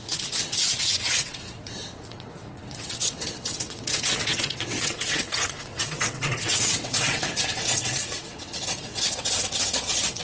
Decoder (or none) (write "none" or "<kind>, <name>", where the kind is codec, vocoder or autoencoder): vocoder, WaveNeXt